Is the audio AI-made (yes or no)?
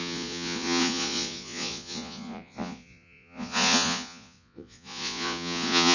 yes